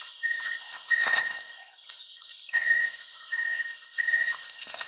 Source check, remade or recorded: remade